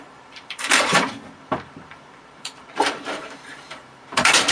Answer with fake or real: fake